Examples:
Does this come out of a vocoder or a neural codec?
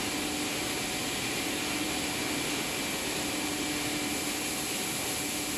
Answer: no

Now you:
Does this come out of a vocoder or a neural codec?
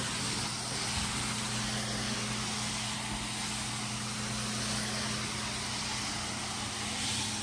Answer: no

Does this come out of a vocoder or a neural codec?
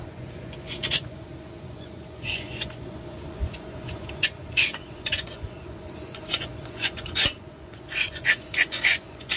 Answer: yes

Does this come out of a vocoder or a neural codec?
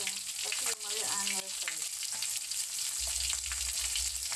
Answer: no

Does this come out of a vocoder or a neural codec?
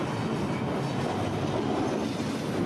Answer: no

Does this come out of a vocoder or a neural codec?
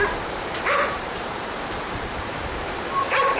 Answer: yes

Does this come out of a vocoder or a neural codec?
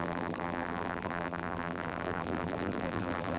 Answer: yes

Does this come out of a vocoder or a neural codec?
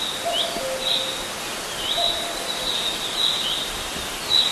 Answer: no